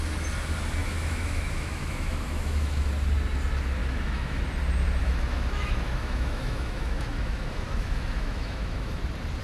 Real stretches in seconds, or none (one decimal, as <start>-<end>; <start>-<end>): 0.0-0.8; 2.9-3.8; 4.4-5.0; 9.0-9.4